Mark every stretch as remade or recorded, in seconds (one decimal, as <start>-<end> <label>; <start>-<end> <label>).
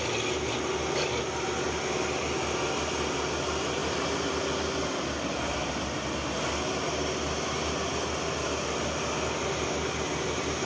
0.0-3.8 recorded; 3.8-4.4 remade; 4.4-10.7 recorded